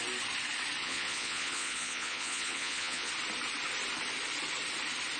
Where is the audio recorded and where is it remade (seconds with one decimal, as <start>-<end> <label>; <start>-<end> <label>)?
0.0-0.8 recorded; 0.8-3.1 remade; 3.1-5.2 recorded